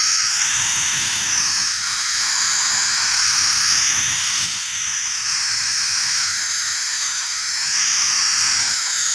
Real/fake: fake